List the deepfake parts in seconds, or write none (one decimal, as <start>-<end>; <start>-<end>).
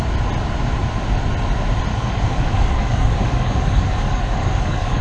1.9-5.0